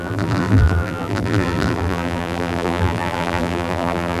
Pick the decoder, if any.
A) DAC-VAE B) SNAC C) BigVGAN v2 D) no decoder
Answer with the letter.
C